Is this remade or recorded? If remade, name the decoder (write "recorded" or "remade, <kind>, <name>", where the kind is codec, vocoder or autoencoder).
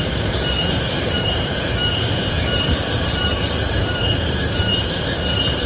remade, vocoder, BigVGAN v2